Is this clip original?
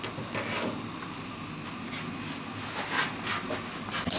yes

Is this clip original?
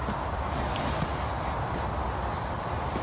yes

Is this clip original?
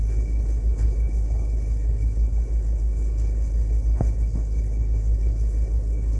no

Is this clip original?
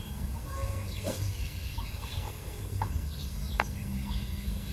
no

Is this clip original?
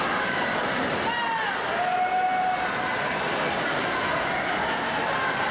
yes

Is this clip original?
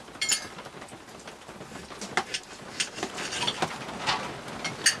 yes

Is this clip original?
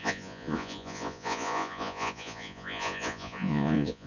no